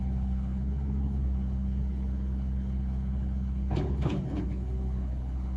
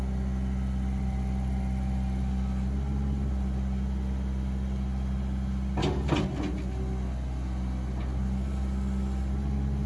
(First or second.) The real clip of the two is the second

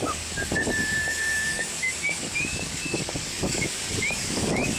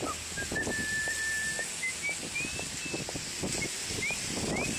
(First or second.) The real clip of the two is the second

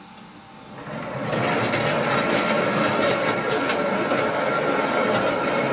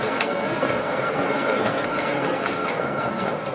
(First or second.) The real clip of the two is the first